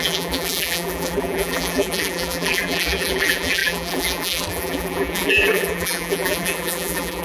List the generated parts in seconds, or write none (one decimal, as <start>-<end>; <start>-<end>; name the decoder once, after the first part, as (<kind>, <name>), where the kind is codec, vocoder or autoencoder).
0.0-7.2 (vocoder, BigVGAN v2)